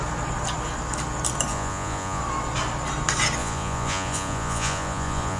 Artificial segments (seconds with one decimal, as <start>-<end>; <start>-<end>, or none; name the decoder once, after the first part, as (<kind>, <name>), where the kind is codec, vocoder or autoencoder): 1.5-2.2 (vocoder, Vocos); 3.4-5.4